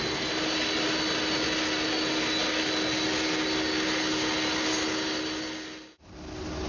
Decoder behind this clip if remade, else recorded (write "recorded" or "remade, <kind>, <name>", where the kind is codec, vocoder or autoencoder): recorded